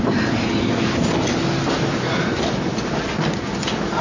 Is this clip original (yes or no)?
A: yes